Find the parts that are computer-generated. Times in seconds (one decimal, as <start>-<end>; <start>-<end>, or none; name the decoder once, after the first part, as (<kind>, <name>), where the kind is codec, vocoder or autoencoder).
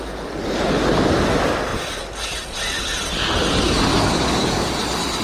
3.9-4.7 (codec, DAC)